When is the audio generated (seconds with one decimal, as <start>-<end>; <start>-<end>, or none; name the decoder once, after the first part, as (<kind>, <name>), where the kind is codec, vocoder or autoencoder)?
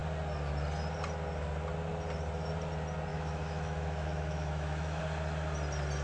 3.1-5.0 (autoencoder, DAC-VAE)